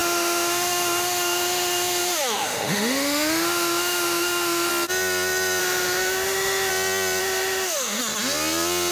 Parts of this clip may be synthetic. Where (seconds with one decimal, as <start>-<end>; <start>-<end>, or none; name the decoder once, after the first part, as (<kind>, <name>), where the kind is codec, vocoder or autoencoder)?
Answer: 0.0-4.7 (autoencoder, DAC-VAE); 5.6-6.7; 7.2-8.0